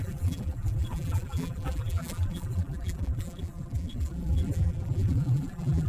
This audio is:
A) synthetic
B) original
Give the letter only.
A